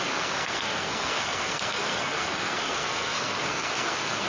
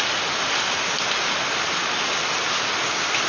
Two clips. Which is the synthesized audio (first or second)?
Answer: first